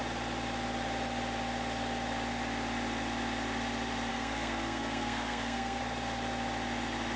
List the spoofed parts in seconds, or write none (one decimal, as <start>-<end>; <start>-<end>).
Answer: 4.1-5.8